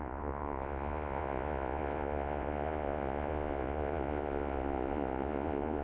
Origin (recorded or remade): remade